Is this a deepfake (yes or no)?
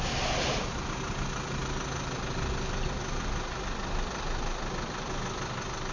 no